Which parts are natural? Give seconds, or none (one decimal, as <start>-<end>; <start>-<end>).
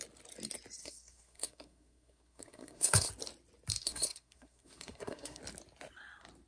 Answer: 0.0-0.8; 3.1-3.8; 5.4-6.5